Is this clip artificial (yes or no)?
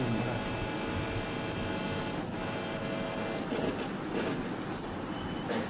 no